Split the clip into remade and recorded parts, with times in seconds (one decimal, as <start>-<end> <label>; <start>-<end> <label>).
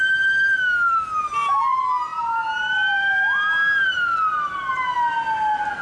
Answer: 0.0-5.8 recorded